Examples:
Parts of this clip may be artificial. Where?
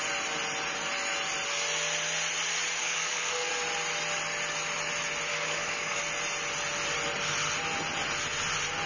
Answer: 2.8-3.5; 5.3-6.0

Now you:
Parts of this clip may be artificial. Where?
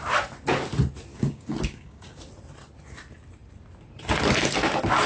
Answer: 1.1-2.2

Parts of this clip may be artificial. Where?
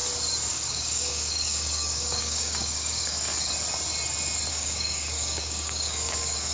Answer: 0.5-3.3; 4.5-6.5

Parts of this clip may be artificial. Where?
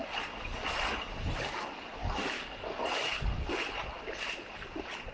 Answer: 2.0-3.5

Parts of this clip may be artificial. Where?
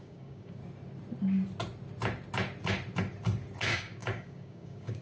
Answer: 0.0-0.6; 3.6-5.0